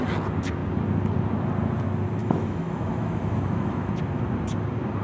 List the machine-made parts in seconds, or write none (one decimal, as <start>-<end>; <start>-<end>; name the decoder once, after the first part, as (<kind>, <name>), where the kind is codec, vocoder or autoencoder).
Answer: 2.2-3.9 (autoencoder, DAC-VAE)